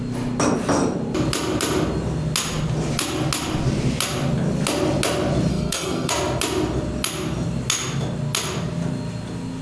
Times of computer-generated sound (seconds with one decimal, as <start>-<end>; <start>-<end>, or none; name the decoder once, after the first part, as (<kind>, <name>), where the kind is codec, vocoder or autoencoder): 5.5-6.1 (codec, SNAC)